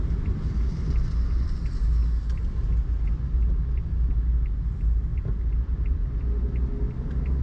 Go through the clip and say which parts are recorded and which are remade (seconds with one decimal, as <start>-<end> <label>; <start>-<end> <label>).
0.0-7.4 recorded